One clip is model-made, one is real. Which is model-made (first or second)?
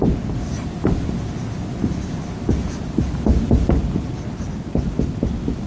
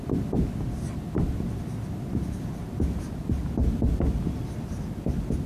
first